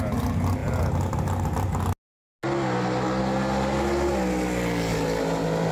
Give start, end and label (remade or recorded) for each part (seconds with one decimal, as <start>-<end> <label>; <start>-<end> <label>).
0.0-4.9 recorded; 4.9-5.7 remade